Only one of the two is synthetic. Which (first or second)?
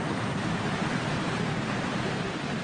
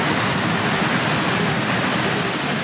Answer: first